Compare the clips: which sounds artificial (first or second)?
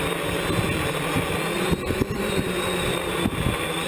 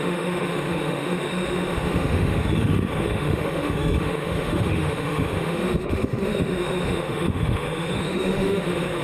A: second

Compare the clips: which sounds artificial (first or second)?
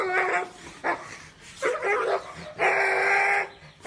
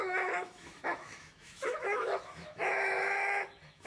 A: second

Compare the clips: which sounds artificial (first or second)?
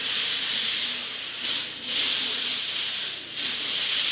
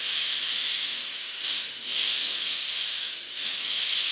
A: second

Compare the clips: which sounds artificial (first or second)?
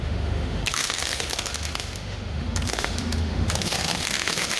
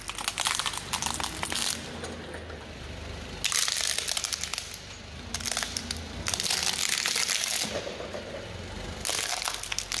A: first